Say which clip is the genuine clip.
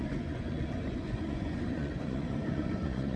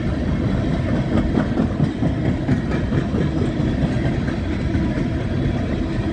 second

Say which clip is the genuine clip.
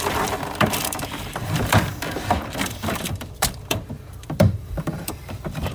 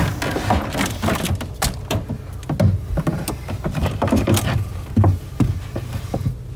second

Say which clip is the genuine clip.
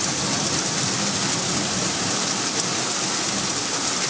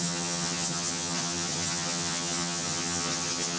first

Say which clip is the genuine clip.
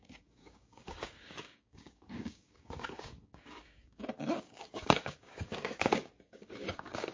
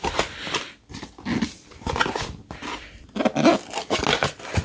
second